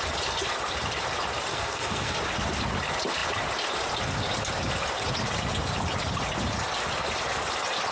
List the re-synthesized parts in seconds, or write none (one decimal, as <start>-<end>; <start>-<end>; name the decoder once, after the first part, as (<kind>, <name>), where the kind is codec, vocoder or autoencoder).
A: 1.5-2.2 (codec, SNAC)